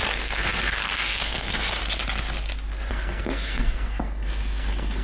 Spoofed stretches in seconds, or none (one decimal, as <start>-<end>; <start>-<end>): 0.0-1.8; 2.9-5.0